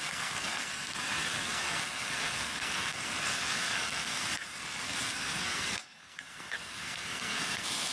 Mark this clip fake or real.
fake